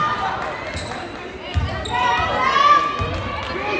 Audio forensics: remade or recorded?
recorded